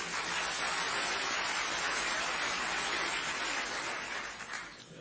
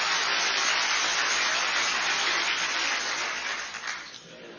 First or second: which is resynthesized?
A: first